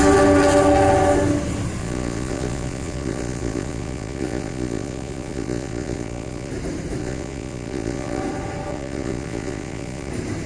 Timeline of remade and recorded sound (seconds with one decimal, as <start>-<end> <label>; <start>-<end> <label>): 0.0-1.8 recorded; 1.8-6.5 remade; 6.5-7.0 recorded; 7.0-8.2 remade; 8.2-8.7 recorded; 8.7-10.1 remade; 10.1-10.5 recorded

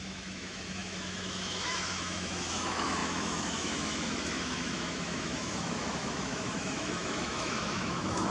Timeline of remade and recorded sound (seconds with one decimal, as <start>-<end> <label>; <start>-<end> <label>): 0.0-8.3 remade

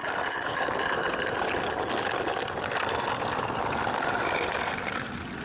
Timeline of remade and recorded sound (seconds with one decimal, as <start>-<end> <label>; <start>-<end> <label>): 0.0-5.4 recorded

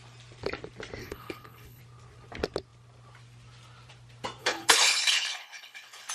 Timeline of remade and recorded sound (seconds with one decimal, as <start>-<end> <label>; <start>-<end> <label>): 0.0-1.0 recorded; 1.0-1.8 remade; 1.8-4.4 recorded; 4.4-6.1 remade

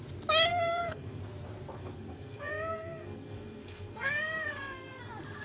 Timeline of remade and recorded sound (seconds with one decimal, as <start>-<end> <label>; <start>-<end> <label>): 0.0-0.5 recorded; 0.5-1.2 remade; 1.2-1.8 recorded; 1.8-5.0 remade; 5.0-5.4 recorded

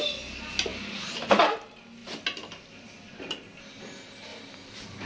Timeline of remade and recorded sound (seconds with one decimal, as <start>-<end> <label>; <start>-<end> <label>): 0.0-5.1 recorded

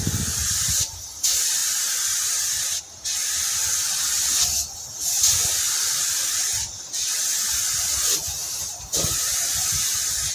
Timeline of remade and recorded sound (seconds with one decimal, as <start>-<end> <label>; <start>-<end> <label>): 0.0-1.6 recorded; 1.6-2.8 remade; 2.8-8.4 recorded; 8.4-9.7 remade; 9.7-10.3 recorded

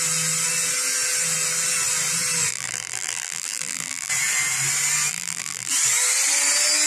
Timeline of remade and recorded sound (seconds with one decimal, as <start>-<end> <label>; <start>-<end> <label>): 0.0-2.5 recorded; 2.5-4.1 remade; 4.1-5.1 recorded; 5.1-5.7 remade; 5.7-6.9 recorded